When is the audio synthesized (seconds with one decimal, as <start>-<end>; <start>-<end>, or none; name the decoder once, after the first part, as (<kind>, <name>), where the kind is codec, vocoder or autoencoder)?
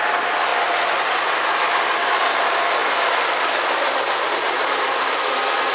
2.8-5.7 (vocoder, BigVGAN v2)